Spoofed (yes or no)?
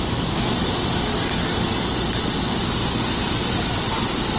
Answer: no